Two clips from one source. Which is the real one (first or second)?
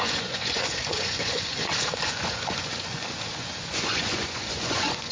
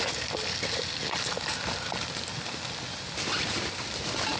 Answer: second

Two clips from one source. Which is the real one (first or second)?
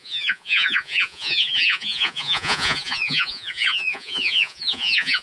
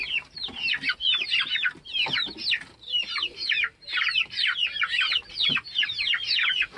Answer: second